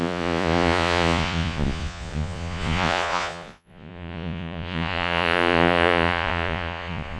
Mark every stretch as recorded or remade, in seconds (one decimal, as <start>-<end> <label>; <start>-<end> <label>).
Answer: 0.0-7.2 remade